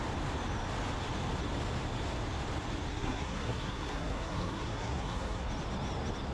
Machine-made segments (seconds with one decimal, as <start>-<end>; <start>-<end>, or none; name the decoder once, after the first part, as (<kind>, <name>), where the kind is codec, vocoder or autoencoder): 2.9-5.5 (codec, SNAC)